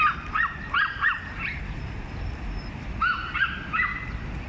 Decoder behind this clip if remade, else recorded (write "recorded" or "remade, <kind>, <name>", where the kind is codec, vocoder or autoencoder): recorded